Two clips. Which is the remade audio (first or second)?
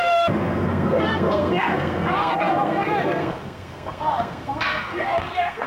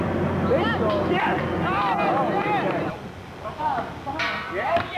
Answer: first